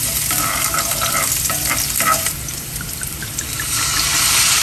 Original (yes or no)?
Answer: no